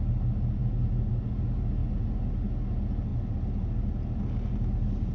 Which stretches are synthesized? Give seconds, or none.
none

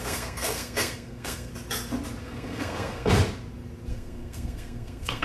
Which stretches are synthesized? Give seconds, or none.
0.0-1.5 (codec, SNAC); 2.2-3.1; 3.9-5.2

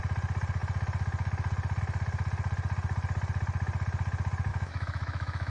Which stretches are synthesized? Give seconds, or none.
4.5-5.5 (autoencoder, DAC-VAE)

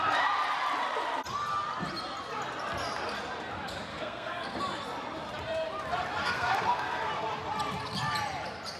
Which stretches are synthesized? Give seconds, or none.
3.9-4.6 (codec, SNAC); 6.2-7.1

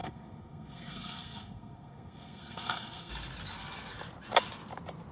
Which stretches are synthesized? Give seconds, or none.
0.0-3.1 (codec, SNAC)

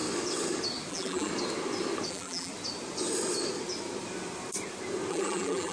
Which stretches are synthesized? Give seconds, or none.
0.9-1.3 (vocoder, BigVGAN v2); 2.1-2.5; 5.1-5.7

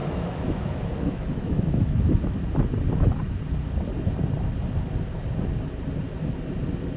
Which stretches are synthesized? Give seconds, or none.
0.0-2.0 (autoencoder, DAC-VAE)

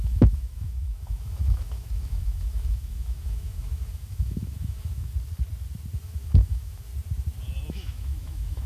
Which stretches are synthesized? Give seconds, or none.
0.0-5.1 (autoencoder, DAC-VAE); 6.0-6.9; 7.7-8.7